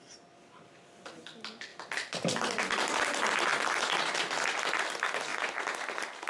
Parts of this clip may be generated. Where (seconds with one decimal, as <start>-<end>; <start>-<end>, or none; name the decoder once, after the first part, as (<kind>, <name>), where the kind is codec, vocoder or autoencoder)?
none